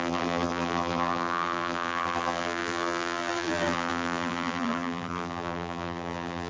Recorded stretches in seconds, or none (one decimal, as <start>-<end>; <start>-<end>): none